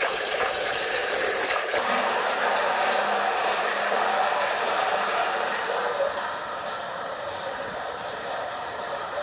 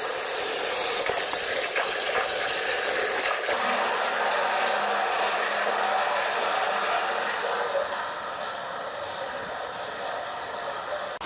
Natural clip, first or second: second